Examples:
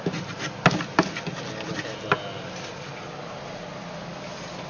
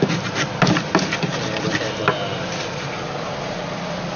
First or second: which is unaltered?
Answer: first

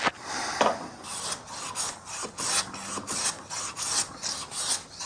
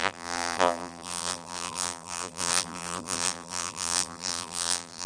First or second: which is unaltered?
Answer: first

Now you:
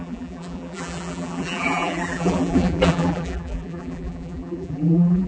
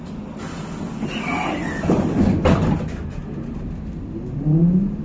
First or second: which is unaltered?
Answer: second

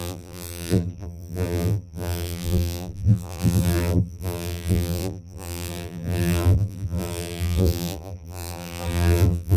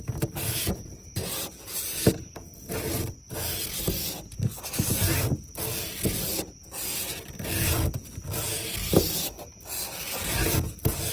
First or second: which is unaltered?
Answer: second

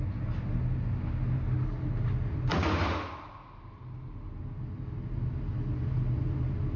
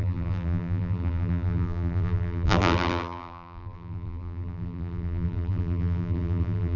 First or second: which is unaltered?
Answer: first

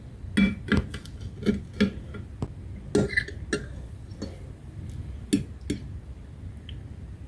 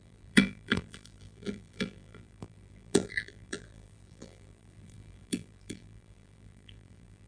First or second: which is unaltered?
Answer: first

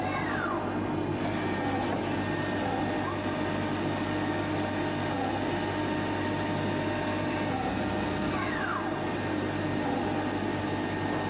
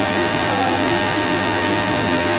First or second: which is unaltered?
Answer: first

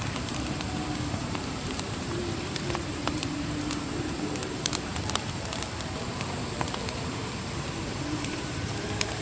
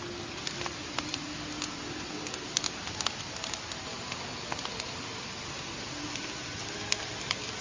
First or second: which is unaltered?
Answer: second